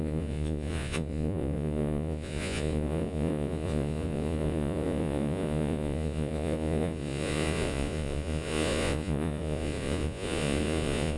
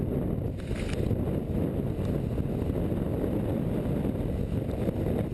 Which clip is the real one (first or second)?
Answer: second